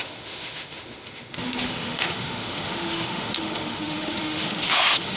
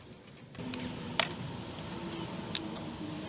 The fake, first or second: first